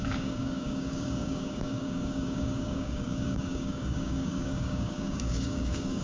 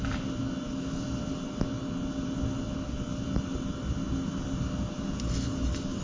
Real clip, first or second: second